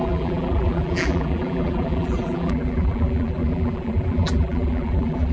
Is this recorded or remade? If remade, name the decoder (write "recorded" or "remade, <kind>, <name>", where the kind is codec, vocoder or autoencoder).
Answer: remade, vocoder, BigVGAN v2